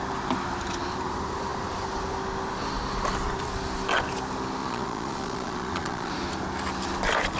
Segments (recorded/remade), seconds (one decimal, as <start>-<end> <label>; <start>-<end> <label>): 0.0-4.6 recorded; 4.6-6.1 remade; 6.1-7.4 recorded